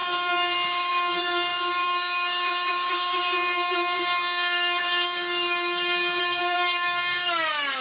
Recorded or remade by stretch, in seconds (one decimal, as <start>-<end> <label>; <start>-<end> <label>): 0.0-7.8 remade